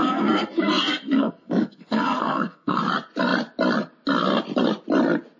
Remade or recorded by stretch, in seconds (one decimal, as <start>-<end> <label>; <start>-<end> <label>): 0.0-2.8 remade; 2.8-5.4 recorded